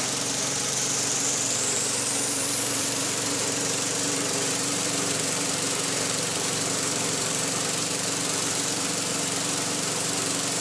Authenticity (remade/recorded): remade